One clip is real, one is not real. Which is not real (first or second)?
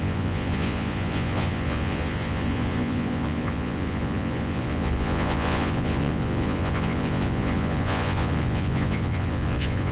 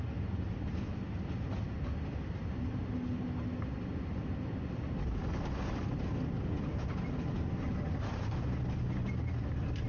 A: first